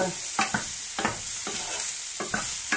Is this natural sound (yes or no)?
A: yes